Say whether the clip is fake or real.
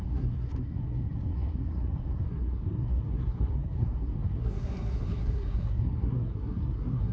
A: fake